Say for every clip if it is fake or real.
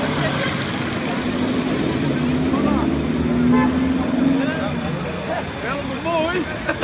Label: real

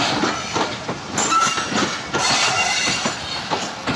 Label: real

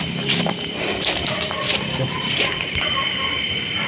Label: fake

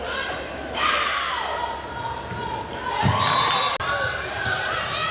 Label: real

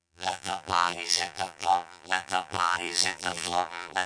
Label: fake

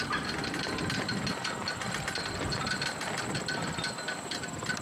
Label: fake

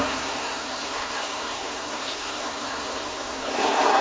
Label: fake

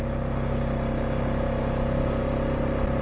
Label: real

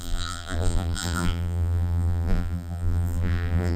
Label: fake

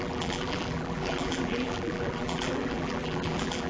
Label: fake